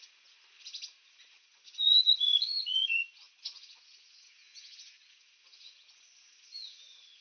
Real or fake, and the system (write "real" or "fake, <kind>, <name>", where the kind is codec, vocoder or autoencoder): fake, vocoder, Vocos